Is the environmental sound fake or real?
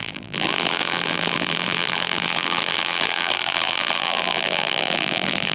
fake